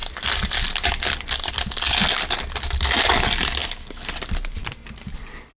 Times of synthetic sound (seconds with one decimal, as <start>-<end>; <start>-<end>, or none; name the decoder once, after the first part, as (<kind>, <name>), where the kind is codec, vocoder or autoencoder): none

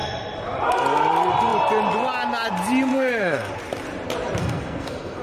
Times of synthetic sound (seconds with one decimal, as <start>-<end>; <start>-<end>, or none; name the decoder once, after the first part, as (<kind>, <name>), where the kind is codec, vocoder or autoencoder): 2.9-3.5 (codec, SNAC); 4.4-5.2

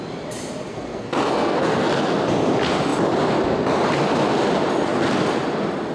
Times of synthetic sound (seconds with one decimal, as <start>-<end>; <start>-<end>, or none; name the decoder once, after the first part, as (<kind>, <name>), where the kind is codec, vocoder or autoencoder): 0.7-1.9 (codec, SNAC)

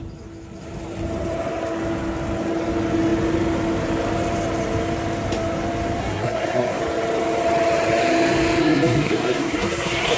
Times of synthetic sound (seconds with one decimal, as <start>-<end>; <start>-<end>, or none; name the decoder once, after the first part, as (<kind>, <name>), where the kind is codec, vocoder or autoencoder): 6.0-6.8 (codec, SNAC); 8.6-10.2

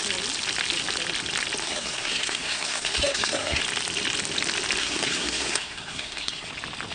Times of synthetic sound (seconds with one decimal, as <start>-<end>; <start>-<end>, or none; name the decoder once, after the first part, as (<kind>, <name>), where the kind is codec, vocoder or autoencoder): 1.6-3.6 (codec, SNAC); 4.8-6.5